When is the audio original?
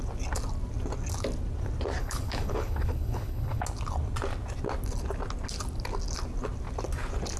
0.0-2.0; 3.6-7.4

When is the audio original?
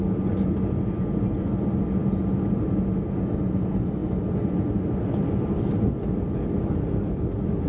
0.0-7.7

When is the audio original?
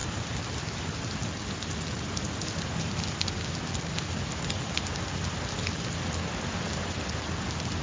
0.0-7.8